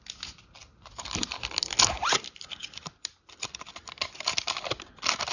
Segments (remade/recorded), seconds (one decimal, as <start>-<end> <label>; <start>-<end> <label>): 0.0-5.3 recorded